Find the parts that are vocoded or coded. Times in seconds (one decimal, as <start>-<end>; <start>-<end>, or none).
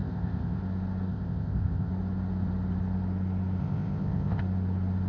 0.0-0.6; 1.1-1.9; 3.6-4.4